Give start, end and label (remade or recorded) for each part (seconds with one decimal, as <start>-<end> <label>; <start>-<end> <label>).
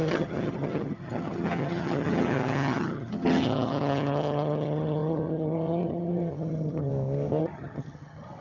0.0-6.9 remade; 6.9-7.4 recorded; 7.4-8.4 remade